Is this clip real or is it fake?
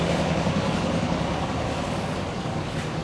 fake